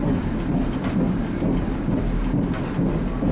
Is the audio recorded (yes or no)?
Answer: yes